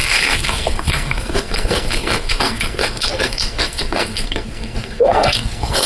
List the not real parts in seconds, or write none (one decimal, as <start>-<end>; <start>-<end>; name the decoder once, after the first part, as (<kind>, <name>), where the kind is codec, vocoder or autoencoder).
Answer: 0.0-5.9 (codec, SNAC)

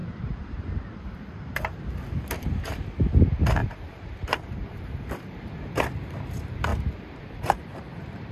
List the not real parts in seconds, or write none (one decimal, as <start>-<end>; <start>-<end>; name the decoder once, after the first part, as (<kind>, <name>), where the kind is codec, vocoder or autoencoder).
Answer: 0.0-1.7 (vocoder, BigVGAN v2); 3.6-5.3; 6.7-7.6